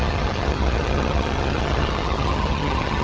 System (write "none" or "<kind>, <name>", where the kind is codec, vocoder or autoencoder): vocoder, HiFi-GAN